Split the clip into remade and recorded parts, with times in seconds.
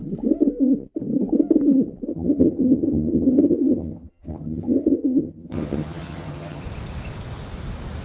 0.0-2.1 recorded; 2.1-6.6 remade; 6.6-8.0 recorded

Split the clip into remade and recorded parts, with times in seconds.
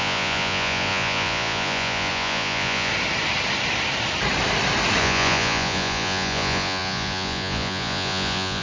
0.0-2.9 remade; 2.9-5.0 recorded; 5.0-8.6 remade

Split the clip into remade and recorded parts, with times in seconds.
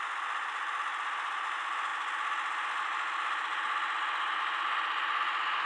0.0-5.7 recorded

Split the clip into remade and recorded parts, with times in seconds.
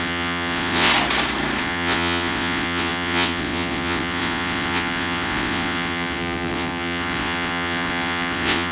0.0-0.9 remade; 0.9-1.6 recorded; 1.6-8.7 remade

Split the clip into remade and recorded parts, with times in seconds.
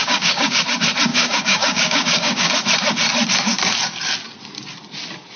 0.0-0.6 remade; 0.6-1.1 recorded; 1.1-2.5 remade; 2.5-5.4 recorded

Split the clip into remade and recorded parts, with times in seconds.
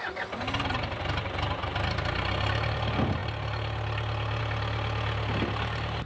0.0-6.1 recorded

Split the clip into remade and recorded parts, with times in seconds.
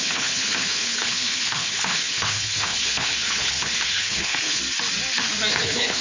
0.0-4.6 remade; 4.6-5.5 recorded; 5.5-6.0 remade